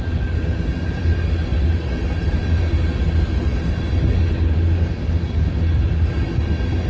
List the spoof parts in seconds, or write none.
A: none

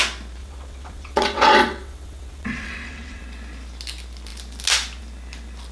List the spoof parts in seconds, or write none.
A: 0.4-3.2 (vocoder, WaveNeXt)